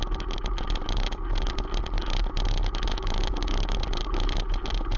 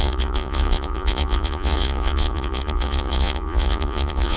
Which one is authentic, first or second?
first